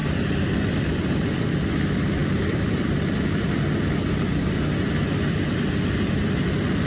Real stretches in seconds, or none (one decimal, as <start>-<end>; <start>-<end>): 1.5-2.2; 3.7-6.9